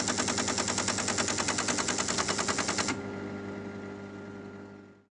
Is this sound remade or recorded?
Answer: recorded